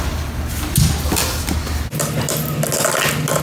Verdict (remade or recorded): recorded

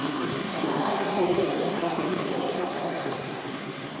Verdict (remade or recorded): remade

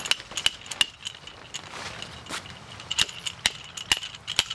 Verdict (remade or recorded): recorded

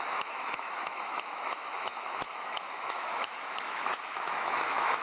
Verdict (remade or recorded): remade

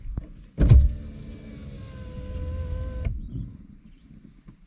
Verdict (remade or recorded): recorded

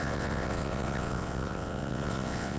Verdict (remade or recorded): remade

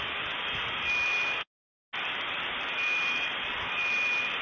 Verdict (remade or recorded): recorded